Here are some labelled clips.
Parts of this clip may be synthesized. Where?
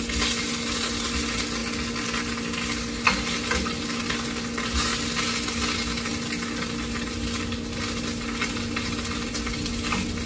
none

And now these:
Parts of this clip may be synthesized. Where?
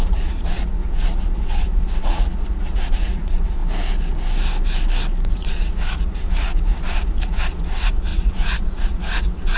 0.0-3.6 (vocoder, Vocos); 5.3-9.6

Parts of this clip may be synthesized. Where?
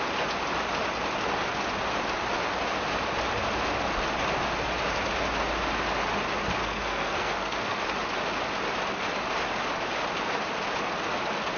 6.6-7.8 (codec, SNAC)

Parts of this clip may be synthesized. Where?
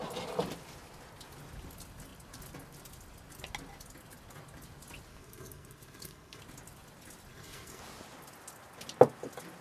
5.1-6.4 (codec, SNAC); 7.3-7.8